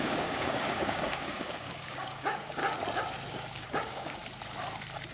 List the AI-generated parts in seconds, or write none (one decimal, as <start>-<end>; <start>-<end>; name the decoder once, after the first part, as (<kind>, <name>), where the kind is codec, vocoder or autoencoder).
0.0-2.6 (codec, DAC); 3.3-4.2